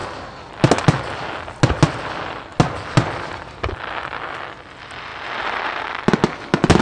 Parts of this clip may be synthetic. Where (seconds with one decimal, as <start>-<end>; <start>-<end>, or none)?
none